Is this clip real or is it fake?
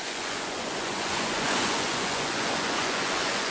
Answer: fake